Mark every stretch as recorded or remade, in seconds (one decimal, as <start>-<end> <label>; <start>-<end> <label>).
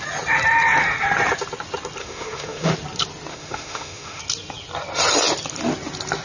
0.0-2.0 recorded; 2.0-2.7 remade; 2.7-3.3 recorded; 3.3-4.2 remade; 4.2-6.2 recorded